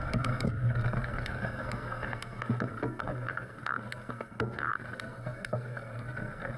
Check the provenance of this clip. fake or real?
fake